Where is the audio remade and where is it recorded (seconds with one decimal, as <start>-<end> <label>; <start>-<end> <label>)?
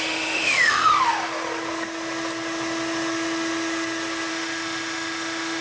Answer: 0.0-0.9 remade; 0.9-4.3 recorded; 4.3-5.6 remade